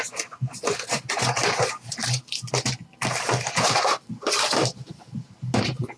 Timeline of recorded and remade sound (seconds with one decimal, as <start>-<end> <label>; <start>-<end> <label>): 0.0-6.0 recorded